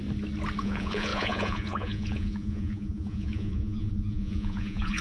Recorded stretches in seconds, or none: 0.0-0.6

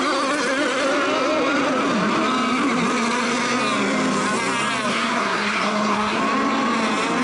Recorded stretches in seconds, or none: 0.0-4.9; 6.2-7.2

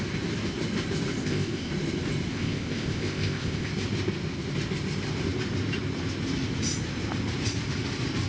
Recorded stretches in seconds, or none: 0.0-1.2; 1.7-2.3; 3.7-8.3

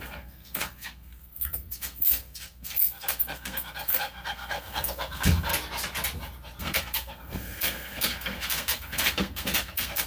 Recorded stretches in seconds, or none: 5.5-6.6